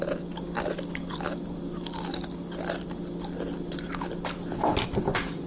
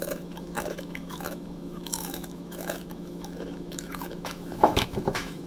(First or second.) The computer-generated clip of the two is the second